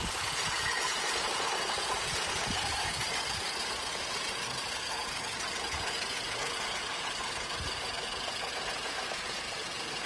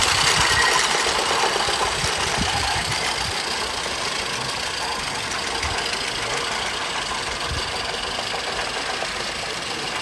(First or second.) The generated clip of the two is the first